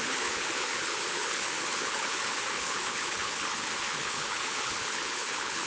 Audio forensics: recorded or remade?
remade